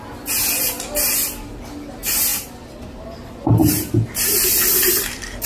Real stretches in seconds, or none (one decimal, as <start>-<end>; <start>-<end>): 0.0-5.5